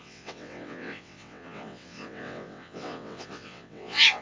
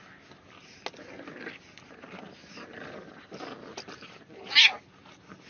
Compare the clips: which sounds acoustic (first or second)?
second